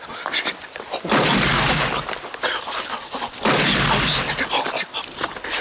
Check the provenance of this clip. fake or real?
real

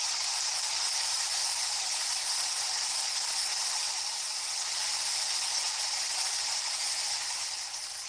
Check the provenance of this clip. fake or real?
fake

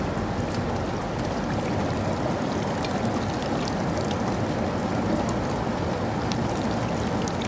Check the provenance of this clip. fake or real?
real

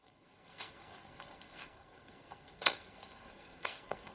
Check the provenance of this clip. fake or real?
fake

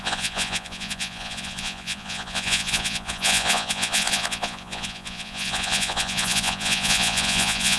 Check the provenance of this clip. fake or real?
fake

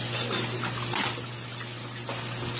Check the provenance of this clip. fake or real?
real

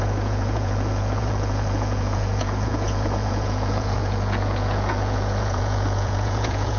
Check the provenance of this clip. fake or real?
fake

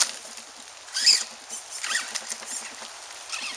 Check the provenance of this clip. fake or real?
real